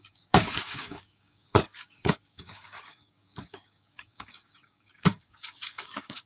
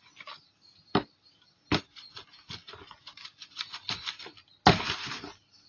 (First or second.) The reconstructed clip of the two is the first